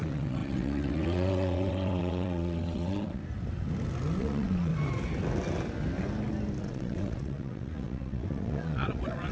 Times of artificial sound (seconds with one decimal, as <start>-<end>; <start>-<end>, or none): 0.0-3.2; 4.2-4.7; 6.6-9.3